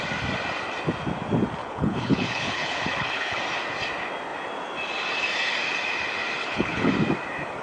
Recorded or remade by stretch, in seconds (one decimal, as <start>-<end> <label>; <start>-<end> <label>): 0.0-1.6 recorded; 1.6-3.4 remade; 3.4-6.4 recorded; 6.4-6.9 remade; 6.9-7.6 recorded